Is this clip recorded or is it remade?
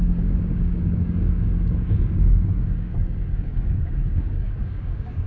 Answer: remade